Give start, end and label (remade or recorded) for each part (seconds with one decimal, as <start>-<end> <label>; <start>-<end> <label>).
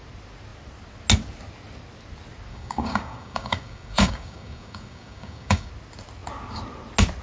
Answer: 0.0-2.5 recorded; 2.5-5.7 remade; 5.7-7.2 recorded